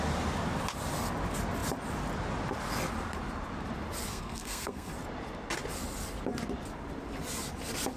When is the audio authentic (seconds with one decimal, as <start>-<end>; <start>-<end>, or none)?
0.0-4.1; 4.9-8.0